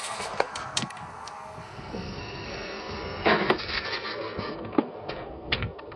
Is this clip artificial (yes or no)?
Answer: yes